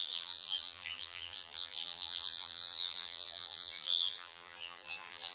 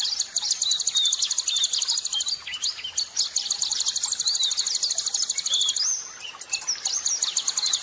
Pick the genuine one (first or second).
second